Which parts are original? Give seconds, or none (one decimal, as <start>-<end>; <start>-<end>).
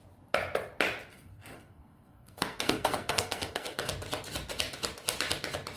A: 0.0-1.1; 3.9-5.8